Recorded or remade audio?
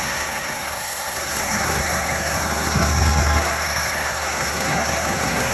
remade